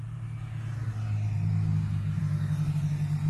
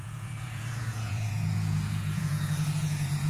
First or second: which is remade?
second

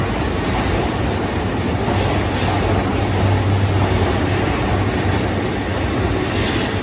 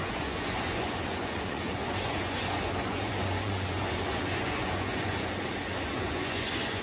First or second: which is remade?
second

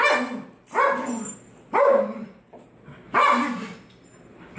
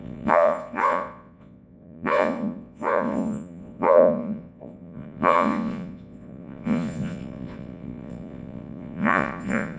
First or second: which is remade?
second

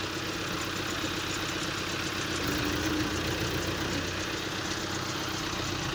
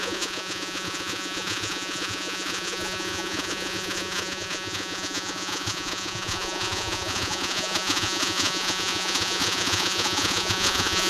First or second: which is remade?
second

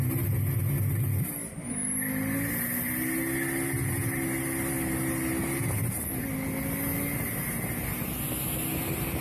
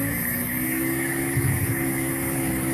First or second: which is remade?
second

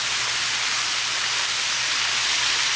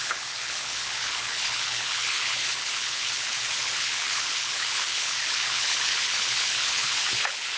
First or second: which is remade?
second